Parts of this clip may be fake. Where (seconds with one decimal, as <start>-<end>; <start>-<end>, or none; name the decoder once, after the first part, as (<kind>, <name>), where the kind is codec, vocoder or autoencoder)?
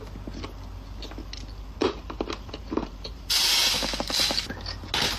1.8-3.7 (vocoder, BigVGAN v2)